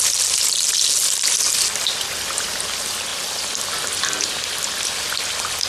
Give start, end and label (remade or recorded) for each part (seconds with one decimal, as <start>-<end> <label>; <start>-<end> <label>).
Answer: 0.0-5.7 recorded